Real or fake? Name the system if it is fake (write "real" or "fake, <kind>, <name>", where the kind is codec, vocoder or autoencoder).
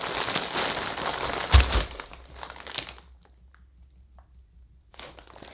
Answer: real